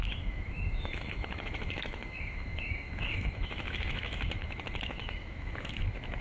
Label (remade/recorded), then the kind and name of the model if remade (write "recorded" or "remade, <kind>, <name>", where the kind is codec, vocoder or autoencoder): remade, autoencoder, DAC-VAE